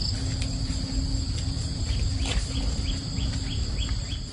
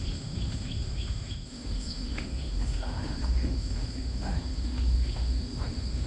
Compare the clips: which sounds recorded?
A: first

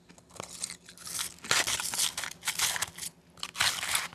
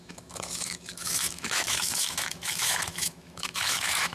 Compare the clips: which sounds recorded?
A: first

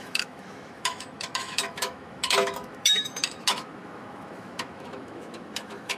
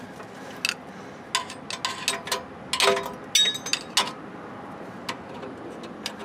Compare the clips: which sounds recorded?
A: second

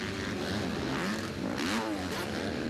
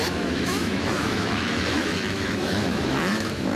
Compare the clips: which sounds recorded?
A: first